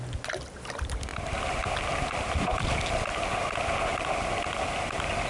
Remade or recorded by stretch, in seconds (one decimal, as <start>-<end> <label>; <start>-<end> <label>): 0.0-5.3 recorded